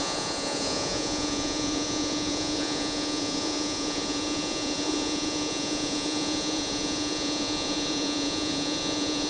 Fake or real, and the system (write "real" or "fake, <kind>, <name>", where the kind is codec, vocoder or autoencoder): fake, vocoder, Vocos